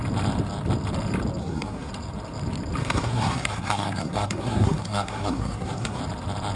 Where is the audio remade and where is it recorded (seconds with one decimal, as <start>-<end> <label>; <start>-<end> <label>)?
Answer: 0.0-1.4 recorded; 1.4-1.9 remade; 1.9-2.8 recorded; 2.8-6.0 remade; 6.0-6.6 recorded